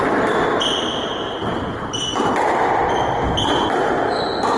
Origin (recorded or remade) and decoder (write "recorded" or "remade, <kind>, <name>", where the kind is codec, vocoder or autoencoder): recorded